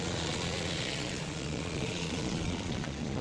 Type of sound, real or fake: fake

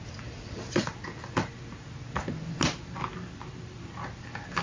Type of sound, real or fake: real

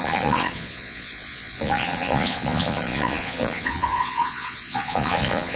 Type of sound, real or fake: fake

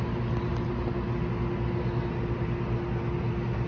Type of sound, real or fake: real